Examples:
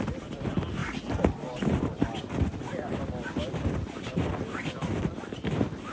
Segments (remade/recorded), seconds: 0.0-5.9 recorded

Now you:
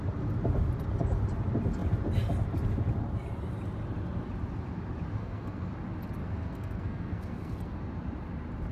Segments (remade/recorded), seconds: 0.0-5.2 recorded; 5.2-5.7 remade; 5.7-6.2 recorded; 6.2-7.8 remade; 7.8-8.7 recorded